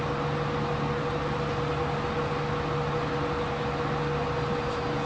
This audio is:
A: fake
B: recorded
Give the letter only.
B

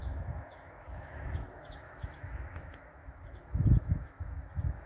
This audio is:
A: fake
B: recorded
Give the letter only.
A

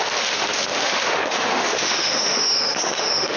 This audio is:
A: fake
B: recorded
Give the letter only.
A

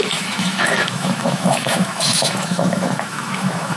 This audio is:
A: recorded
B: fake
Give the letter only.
B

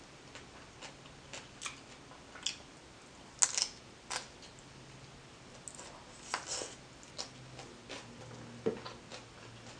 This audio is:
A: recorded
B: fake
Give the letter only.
A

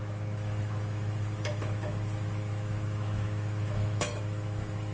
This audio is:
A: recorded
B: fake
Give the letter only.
B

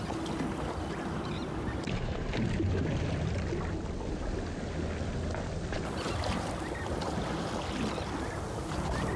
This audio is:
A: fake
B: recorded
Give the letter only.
B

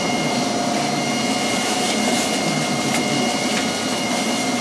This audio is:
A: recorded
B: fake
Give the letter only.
A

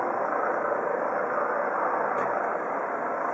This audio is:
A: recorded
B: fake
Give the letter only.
A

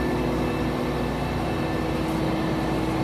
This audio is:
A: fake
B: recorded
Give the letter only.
B